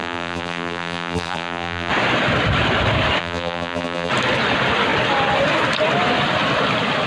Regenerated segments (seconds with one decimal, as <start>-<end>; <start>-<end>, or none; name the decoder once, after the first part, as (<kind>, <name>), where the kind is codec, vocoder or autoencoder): 0.0-1.9 (vocoder, BigVGAN v2); 3.2-4.1